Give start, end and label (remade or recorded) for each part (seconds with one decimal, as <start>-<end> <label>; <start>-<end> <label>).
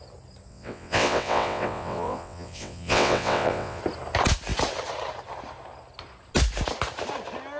0.0-0.5 recorded; 0.5-3.8 remade; 3.8-7.6 recorded